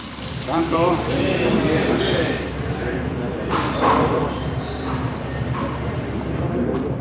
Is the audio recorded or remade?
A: remade